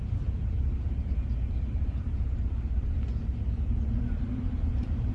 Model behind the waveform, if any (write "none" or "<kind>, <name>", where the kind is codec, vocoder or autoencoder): vocoder, BigVGAN v2